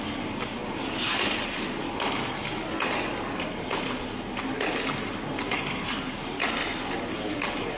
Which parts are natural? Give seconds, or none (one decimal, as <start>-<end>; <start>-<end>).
0.0-7.8